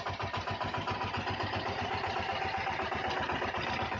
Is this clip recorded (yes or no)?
yes